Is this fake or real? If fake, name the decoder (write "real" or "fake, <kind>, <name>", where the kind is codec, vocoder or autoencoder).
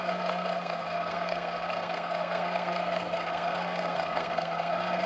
fake, codec, SNAC